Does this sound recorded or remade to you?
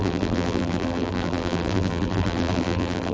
remade